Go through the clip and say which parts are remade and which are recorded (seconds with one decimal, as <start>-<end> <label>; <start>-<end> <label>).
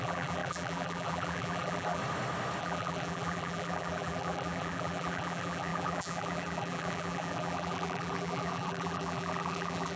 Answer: 0.0-2.0 remade; 2.0-2.6 recorded; 2.6-10.0 remade